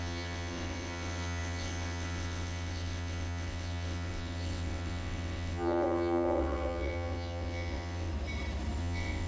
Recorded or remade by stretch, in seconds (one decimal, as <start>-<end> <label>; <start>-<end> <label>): 0.0-8.1 remade; 8.1-8.8 recorded; 8.8-9.3 remade